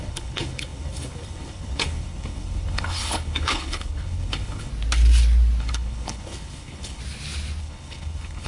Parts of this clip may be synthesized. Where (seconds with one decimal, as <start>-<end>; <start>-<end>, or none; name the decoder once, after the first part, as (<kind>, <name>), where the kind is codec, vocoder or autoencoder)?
0.0-4.7 (codec, HILCodec); 5.6-7.0; 7.6-8.5